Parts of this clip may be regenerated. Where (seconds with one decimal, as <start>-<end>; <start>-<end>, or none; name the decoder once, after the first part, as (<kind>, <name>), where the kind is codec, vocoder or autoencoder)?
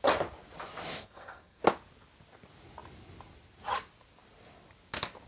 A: 1.0-1.6 (codec, SNAC)